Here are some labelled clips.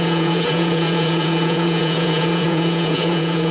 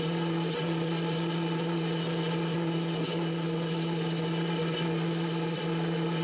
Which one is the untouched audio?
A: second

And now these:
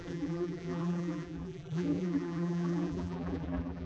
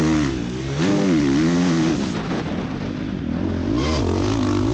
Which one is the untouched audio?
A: second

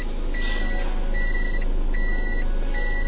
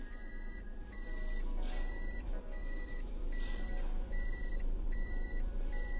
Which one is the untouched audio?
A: first